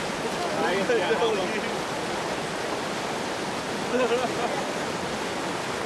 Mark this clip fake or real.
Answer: real